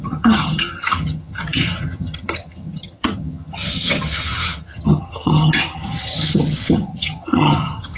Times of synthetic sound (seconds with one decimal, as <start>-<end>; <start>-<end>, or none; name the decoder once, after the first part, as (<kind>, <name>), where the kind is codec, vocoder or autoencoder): 0.0-8.0 (vocoder, HiFi-GAN)